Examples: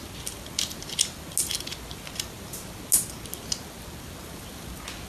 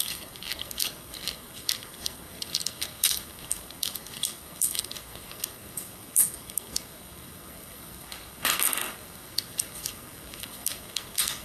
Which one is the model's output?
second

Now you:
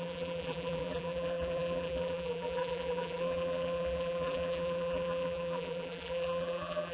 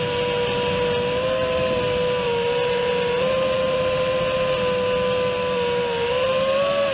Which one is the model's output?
first